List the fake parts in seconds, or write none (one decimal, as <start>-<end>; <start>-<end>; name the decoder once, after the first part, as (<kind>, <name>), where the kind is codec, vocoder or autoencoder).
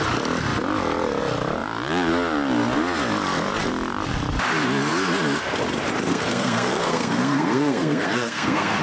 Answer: 6.1-8.8 (codec, SNAC)